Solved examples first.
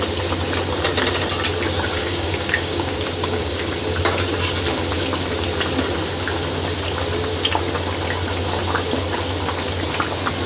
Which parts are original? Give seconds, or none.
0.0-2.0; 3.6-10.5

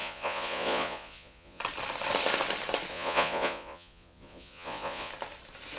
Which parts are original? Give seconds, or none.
1.6-2.9; 5.1-5.8

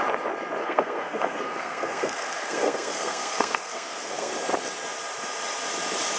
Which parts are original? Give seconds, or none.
0.0-0.6; 4.3-6.2

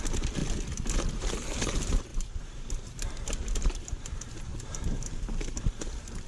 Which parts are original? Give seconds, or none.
0.4-1.1

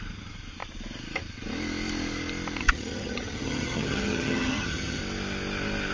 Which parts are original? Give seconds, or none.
0.0-2.6; 5.0-5.9